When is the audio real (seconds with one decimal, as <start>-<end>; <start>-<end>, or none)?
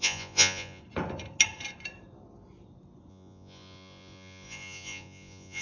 0.8-3.1